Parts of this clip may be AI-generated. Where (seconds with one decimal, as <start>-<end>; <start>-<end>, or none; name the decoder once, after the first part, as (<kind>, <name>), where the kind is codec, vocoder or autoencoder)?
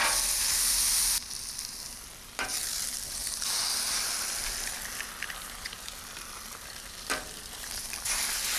0.6-3.2 (vocoder, BigVGAN v2); 5.2-8.6